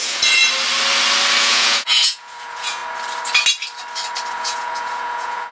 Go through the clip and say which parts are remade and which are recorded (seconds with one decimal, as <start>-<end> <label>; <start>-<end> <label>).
0.0-0.4 remade; 0.4-1.4 recorded; 1.4-2.8 remade; 2.8-4.3 recorded; 4.3-5.5 remade